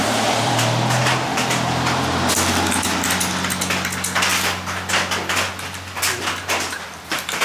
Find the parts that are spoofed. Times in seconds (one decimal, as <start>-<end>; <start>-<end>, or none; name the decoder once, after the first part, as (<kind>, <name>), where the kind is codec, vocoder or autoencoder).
0.0-0.5 (vocoder, BigVGAN v2)